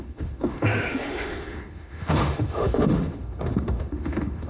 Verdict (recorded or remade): remade